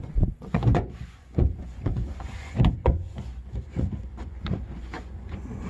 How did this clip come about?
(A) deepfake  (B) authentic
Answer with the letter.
A